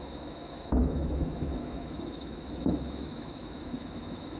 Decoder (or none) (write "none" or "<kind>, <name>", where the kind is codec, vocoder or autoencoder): autoencoder, DAC-VAE